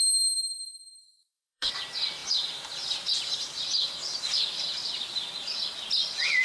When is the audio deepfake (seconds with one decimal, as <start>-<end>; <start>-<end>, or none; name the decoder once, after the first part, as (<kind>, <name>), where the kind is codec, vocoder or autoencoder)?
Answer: 1.0-1.7 (autoencoder, DAC-VAE)

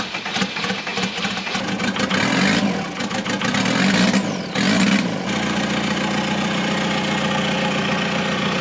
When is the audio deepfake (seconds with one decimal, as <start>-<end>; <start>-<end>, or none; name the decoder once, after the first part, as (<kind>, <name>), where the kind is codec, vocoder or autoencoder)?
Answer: none

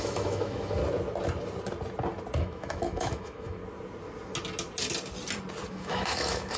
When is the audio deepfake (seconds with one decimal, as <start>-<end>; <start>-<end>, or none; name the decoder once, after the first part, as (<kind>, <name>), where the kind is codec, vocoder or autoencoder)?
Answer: 0.0-0.8 (autoencoder, DAC-VAE); 2.4-3.6; 5.7-6.6

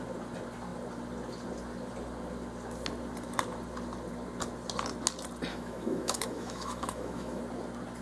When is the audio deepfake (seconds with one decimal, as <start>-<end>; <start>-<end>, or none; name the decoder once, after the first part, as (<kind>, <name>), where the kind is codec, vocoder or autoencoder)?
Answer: 5.5-7.4 (autoencoder, DAC-VAE)

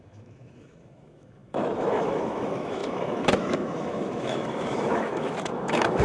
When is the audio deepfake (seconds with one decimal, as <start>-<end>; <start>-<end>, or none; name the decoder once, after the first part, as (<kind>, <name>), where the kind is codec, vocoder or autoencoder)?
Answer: 0.0-6.0 (autoencoder, DAC-VAE)

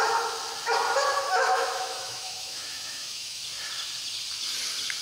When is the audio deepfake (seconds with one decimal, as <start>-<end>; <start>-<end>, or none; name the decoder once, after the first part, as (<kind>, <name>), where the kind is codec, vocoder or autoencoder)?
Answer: 1.2-3.4 (autoencoder, DAC-VAE)